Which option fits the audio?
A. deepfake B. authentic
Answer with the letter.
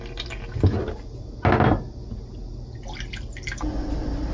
B